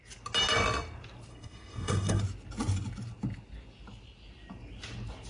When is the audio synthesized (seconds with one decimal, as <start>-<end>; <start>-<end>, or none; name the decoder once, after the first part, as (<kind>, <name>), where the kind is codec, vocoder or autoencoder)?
1.3-2.2 (codec, SNAC)